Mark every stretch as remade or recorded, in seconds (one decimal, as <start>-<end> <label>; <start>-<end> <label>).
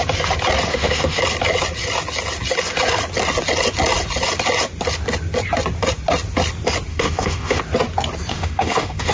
0.0-0.7 recorded; 0.7-1.2 remade; 1.2-6.9 recorded; 6.9-7.6 remade; 7.6-8.3 recorded; 8.3-9.1 remade